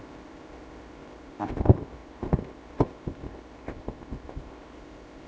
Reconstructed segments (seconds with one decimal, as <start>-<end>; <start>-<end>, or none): 0.0-5.3